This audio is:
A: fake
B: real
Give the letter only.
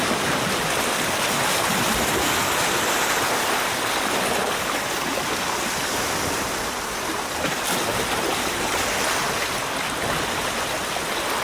B